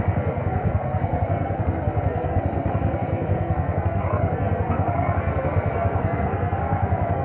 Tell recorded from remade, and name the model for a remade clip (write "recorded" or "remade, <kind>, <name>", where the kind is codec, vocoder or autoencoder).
remade, codec, SNAC